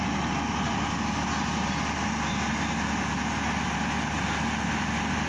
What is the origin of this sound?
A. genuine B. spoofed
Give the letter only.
A